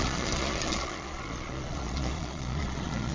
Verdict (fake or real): fake